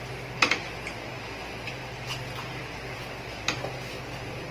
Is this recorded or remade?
recorded